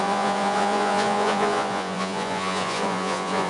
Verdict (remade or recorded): remade